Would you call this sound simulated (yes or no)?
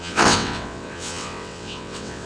yes